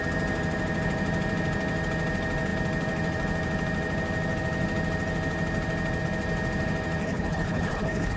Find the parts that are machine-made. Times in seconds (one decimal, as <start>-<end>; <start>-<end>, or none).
7.0-8.2